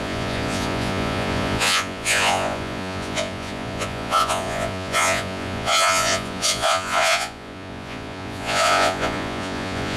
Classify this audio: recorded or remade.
remade